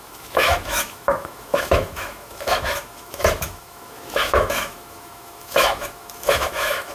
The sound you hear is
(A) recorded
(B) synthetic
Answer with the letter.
B